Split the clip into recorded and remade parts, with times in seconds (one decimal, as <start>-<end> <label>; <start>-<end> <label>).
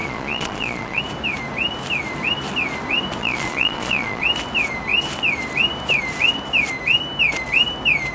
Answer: 0.0-1.0 remade; 1.0-3.2 recorded; 3.2-4.2 remade; 4.2-8.1 recorded